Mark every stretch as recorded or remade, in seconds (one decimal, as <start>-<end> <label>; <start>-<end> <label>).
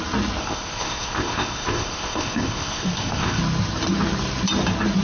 0.0-0.4 recorded; 0.4-3.4 remade; 3.4-5.0 recorded